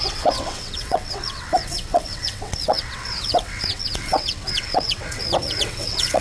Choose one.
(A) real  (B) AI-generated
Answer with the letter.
B